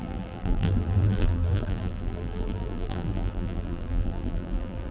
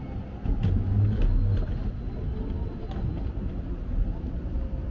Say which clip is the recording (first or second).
second